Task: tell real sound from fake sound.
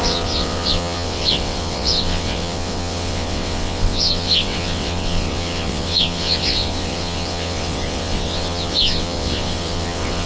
fake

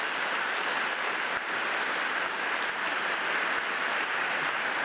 real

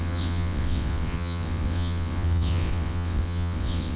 fake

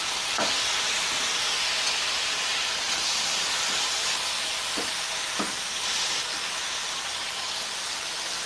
real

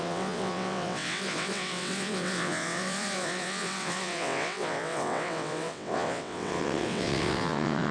fake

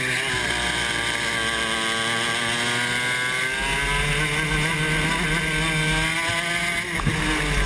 real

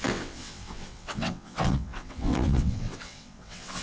fake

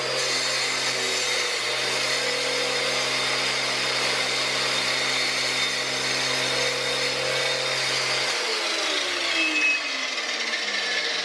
real